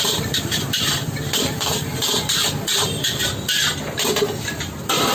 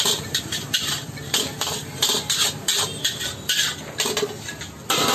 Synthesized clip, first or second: first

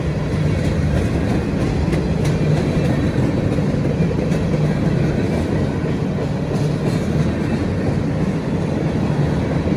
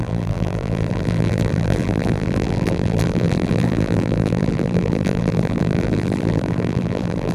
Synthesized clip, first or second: second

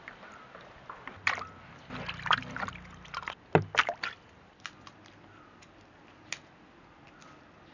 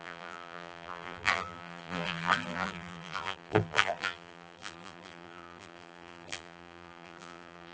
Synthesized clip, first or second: second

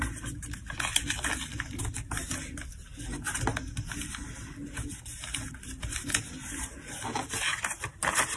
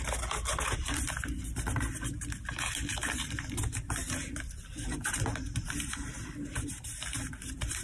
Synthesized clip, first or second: second